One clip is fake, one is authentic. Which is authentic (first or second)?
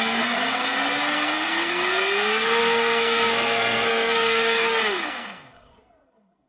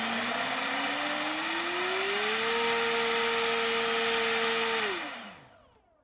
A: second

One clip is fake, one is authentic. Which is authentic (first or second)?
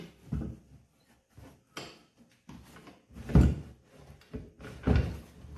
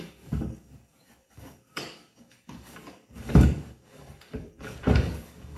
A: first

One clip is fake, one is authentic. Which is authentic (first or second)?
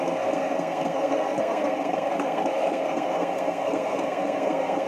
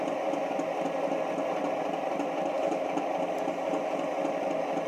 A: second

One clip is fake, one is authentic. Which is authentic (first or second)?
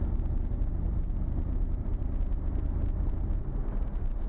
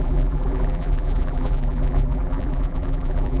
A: first